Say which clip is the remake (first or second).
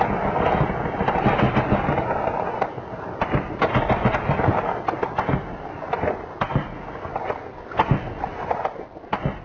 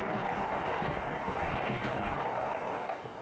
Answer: second